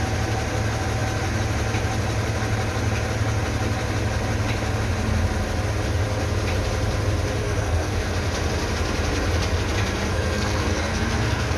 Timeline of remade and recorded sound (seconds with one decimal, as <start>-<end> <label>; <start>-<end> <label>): 0.0-7.4 recorded; 7.4-8.1 remade; 8.1-10.1 recorded; 10.1-11.6 remade